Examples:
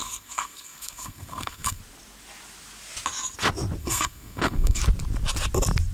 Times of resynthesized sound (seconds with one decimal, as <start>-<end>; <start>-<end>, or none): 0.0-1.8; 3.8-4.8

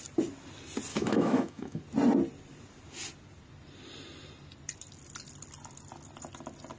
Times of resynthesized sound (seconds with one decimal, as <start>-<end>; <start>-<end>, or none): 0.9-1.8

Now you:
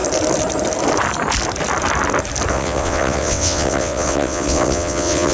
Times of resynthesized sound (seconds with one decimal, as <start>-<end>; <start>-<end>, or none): 2.5-5.3

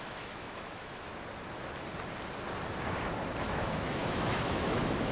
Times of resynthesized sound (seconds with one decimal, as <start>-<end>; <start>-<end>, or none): 0.0-1.1; 3.5-5.1